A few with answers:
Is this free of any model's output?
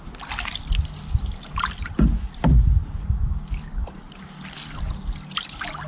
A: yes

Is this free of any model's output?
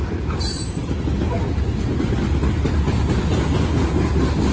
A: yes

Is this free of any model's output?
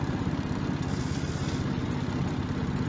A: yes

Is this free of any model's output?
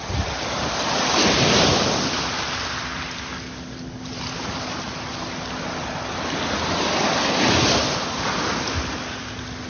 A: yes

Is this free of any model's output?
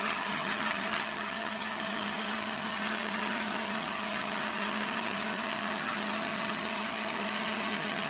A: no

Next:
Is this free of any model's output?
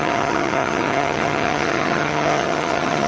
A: no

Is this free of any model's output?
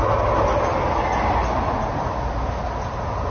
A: yes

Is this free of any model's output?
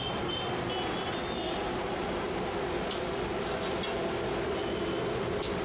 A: yes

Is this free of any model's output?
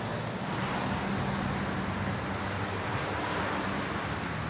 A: yes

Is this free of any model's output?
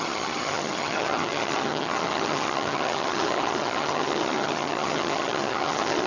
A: no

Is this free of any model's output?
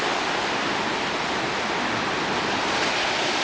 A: yes